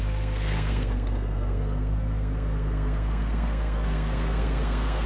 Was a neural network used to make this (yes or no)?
yes